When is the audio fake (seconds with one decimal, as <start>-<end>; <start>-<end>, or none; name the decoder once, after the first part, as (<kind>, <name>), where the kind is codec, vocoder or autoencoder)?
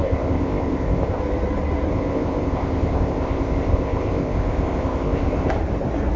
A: 0.0-1.2 (codec, ZipCodec); 1.9-5.5